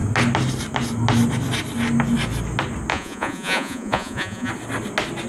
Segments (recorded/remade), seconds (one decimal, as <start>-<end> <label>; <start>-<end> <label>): 0.0-2.9 recorded; 2.9-4.5 remade; 4.5-5.3 recorded